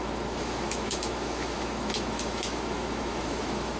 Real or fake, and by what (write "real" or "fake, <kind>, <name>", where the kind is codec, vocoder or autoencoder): fake, autoencoder, DAC-VAE